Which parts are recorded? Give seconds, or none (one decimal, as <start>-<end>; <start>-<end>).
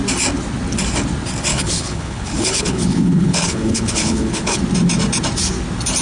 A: 0.0-1.5; 4.6-6.0